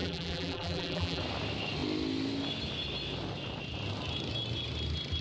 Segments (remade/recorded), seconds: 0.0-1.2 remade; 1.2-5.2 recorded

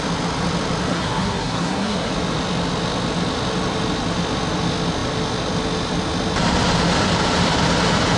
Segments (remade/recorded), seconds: 0.0-0.9 recorded; 0.9-2.1 remade; 2.1-8.2 recorded

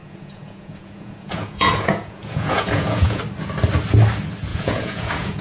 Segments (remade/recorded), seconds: 0.0-3.2 remade; 3.2-4.5 recorded; 4.5-5.4 remade

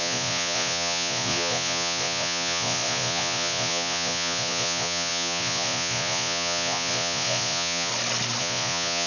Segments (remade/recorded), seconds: 0.0-7.9 remade; 7.9-8.4 recorded; 8.4-9.1 remade

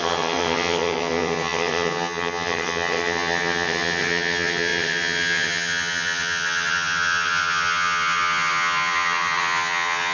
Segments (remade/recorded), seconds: 0.0-10.1 remade